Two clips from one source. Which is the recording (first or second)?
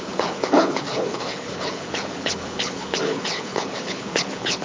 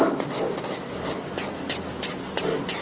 second